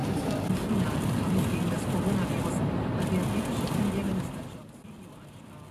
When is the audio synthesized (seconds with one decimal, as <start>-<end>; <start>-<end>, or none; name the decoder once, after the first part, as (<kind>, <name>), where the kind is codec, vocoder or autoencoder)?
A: 4.0-4.8 (vocoder, BigVGAN v2)